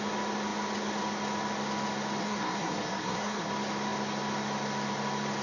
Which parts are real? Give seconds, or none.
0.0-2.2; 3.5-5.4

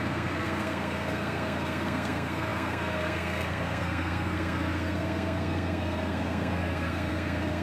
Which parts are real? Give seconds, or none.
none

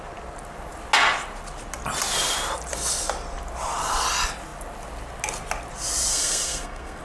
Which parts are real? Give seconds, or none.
0.0-6.1